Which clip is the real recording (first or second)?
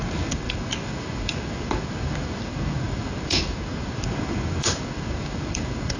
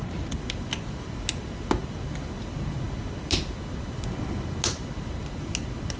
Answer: second